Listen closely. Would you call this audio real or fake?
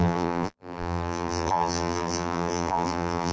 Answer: fake